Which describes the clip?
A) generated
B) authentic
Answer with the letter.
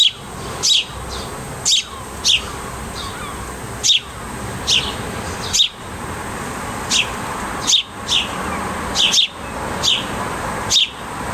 B